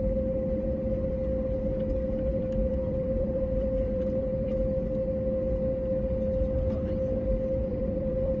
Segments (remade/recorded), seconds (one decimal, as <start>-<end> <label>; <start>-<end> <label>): 0.0-2.3 recorded; 2.3-4.5 remade; 4.5-7.7 recorded; 7.7-8.4 remade

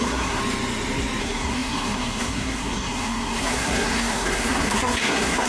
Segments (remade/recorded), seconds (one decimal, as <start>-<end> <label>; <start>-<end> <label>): 0.0-0.4 remade; 0.4-1.2 recorded; 1.2-5.5 remade

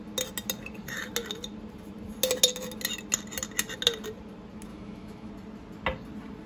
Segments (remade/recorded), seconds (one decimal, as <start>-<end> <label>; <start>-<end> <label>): 0.0-4.7 recorded; 4.7-5.3 remade; 5.3-6.5 recorded

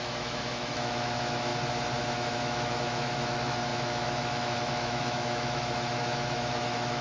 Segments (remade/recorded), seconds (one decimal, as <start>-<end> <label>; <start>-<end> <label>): 0.0-1.5 remade; 1.5-2.0 recorded; 2.0-7.0 remade

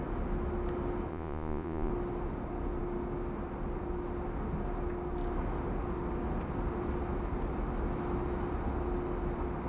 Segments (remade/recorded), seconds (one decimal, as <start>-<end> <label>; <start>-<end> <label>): 0.0-1.1 recorded; 1.1-1.9 remade; 1.9-9.7 recorded